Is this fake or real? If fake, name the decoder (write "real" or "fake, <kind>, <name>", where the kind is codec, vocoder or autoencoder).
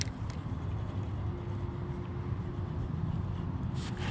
real